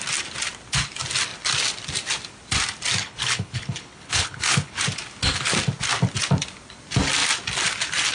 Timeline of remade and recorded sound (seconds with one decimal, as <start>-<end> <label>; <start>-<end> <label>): 0.0-3.0 recorded; 3.0-4.8 remade; 4.8-8.1 recorded